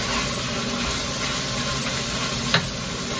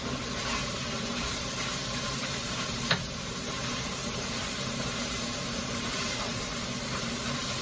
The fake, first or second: second